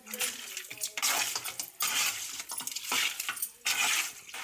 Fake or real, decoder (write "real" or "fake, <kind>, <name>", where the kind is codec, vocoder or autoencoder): fake, vocoder, BigVGAN v2